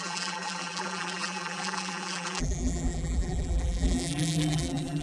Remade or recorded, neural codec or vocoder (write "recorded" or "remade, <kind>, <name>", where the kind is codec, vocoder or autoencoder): remade, vocoder, BigVGAN v2